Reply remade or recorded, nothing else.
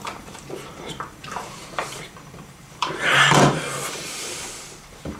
remade